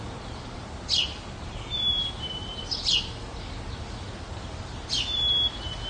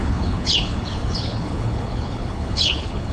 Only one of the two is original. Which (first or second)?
first